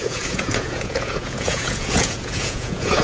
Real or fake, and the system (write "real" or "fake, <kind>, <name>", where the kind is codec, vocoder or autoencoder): fake, vocoder, Vocos